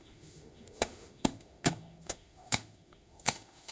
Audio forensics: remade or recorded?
remade